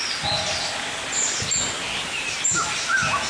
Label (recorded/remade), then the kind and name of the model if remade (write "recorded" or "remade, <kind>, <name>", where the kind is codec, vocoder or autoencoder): recorded